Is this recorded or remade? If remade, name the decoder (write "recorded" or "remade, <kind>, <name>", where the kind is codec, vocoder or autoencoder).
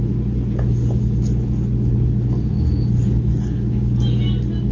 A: recorded